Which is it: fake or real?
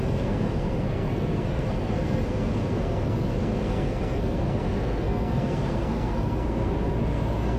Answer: fake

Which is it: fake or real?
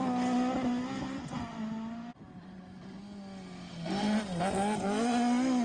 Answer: real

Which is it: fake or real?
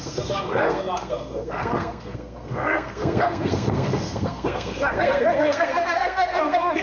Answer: fake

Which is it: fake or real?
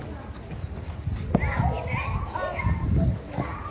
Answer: real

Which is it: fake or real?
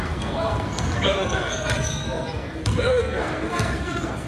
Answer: fake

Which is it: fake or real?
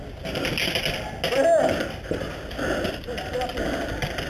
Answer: real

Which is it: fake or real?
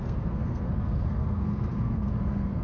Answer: fake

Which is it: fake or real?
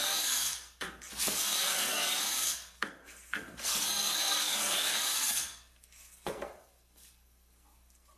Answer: fake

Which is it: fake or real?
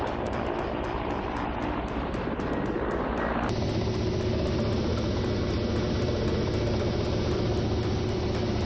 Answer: real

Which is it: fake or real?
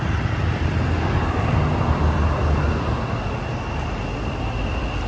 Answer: real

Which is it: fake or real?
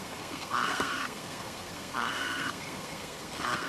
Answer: fake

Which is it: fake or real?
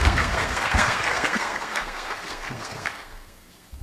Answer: fake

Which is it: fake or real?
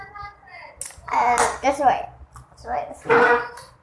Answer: real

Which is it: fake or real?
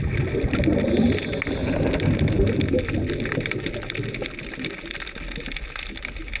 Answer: real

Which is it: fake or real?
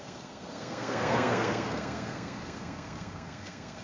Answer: fake